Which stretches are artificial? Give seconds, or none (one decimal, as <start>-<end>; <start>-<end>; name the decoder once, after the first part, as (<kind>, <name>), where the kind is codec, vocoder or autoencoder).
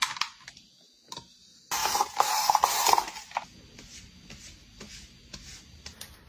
none